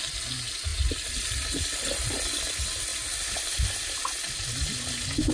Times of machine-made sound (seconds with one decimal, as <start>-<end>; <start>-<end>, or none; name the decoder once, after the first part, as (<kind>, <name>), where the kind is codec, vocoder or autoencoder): none

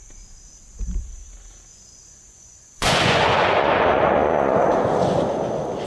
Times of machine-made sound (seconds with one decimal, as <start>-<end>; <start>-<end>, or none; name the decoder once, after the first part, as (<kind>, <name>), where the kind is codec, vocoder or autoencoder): 1.7-5.2 (vocoder, Vocos)

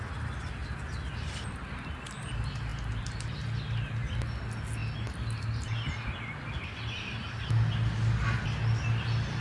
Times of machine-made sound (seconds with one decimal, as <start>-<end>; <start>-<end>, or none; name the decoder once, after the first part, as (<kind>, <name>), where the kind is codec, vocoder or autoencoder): none

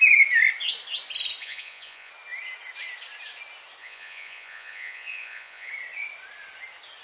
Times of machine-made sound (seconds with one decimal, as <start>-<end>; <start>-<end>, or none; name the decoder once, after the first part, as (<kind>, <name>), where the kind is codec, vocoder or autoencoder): 1.4-2.1 (vocoder, Vocos); 3.8-5.7

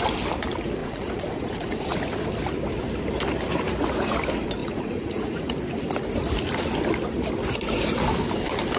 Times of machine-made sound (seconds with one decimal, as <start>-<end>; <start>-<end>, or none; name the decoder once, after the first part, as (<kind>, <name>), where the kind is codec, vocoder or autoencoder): 0.8-2.0 (vocoder, Vocos); 4.6-5.5